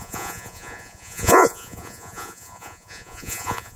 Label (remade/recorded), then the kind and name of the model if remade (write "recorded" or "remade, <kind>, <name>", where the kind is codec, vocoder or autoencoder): remade, vocoder, Vocos